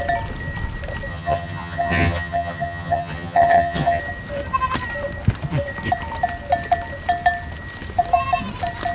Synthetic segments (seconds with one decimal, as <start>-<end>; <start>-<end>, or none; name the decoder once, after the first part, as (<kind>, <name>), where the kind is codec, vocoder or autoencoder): 1.1-4.0 (vocoder, HiFi-GAN)